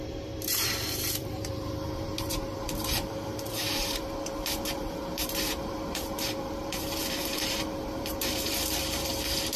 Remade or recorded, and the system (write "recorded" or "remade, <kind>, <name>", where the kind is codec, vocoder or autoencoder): remade, vocoder, BigVGAN v2